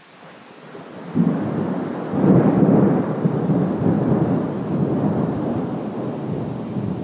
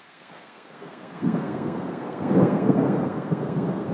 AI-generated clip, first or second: second